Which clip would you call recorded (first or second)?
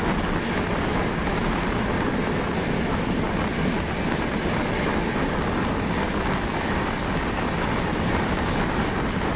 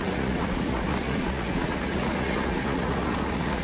first